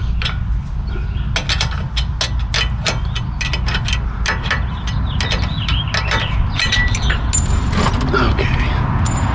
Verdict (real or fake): real